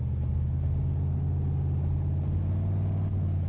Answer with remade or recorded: recorded